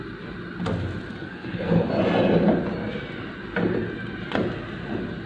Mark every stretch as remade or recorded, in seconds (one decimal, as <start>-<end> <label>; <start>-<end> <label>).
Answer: 0.0-1.1 recorded; 1.1-1.9 remade; 1.9-5.3 recorded